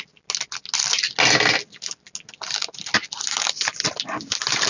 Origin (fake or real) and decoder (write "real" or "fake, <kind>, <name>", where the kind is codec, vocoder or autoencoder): real